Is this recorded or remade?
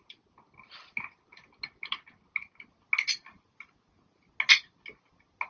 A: recorded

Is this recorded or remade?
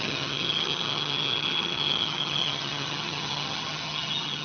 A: remade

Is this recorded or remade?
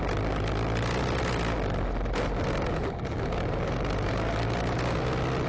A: recorded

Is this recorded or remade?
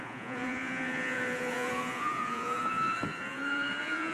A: remade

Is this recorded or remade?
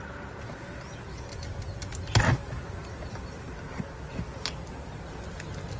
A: recorded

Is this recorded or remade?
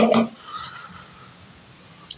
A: recorded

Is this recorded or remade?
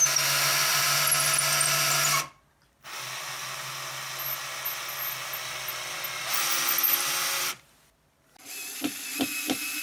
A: recorded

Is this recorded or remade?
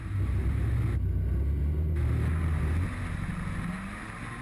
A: recorded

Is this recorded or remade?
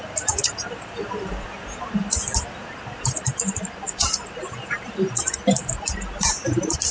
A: remade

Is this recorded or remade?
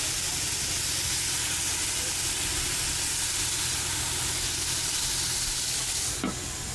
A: recorded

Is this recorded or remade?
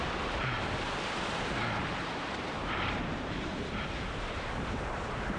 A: remade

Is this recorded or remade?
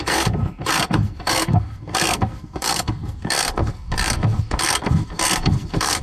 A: remade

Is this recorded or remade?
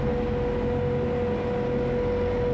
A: recorded